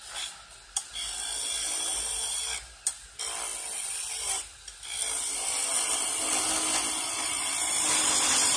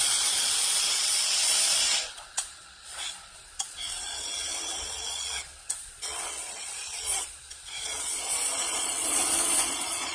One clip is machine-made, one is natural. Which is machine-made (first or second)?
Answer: second